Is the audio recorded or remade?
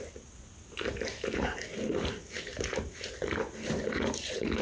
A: recorded